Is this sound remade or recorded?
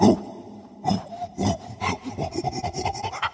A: remade